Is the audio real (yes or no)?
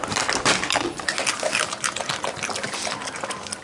yes